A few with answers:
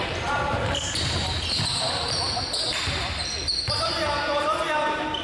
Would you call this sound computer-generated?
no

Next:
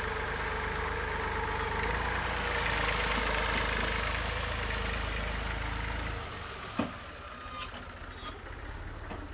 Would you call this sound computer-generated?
no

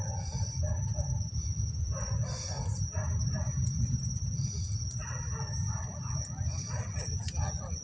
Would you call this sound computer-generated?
no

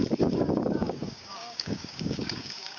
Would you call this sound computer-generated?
yes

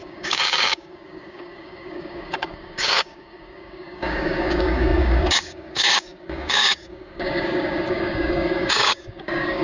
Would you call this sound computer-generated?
yes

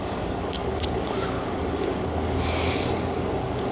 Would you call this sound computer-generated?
yes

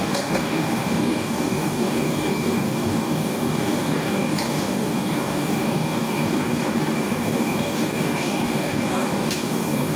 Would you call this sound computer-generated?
yes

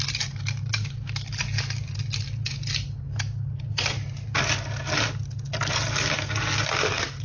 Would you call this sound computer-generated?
no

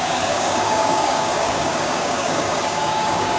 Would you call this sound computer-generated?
yes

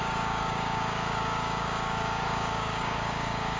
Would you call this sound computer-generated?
yes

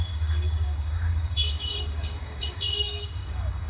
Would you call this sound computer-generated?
yes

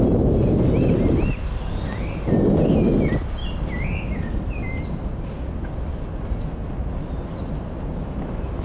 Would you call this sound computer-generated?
no